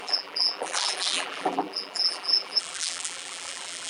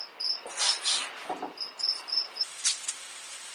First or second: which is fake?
first